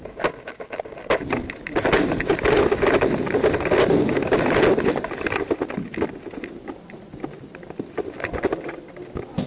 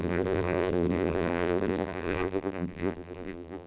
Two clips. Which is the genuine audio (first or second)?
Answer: first